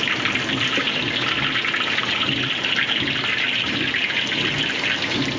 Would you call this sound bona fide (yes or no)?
yes